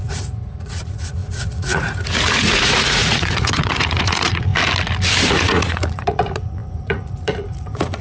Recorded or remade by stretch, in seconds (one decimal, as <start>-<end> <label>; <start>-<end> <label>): 0.0-4.5 remade; 4.5-5.3 recorded; 5.3-8.0 remade